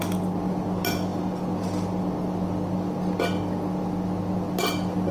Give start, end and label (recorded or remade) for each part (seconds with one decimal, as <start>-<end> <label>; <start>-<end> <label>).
0.0-5.1 recorded